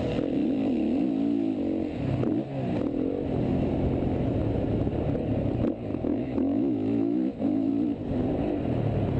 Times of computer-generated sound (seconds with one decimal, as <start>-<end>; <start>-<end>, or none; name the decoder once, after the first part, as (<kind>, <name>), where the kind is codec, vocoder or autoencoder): 5.9-7.7 (autoencoder, DAC-VAE)